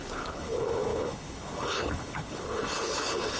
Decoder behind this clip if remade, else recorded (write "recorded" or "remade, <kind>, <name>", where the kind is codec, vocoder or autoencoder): remade, codec, HILCodec